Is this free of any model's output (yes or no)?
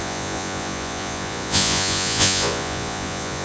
no